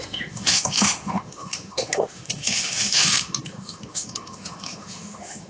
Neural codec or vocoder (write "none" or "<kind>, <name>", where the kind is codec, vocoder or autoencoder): autoencoder, DAC-VAE